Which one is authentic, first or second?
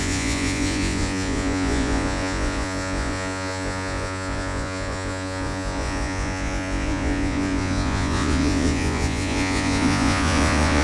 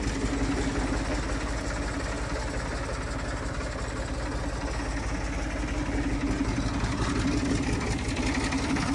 second